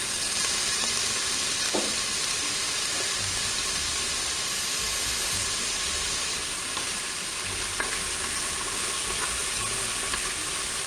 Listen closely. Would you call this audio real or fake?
real